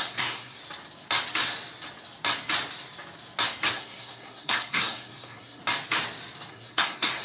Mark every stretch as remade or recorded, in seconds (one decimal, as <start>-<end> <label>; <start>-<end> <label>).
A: 0.0-0.6 remade; 0.6-3.7 recorded; 3.7-5.6 remade; 5.6-6.5 recorded; 6.5-7.2 remade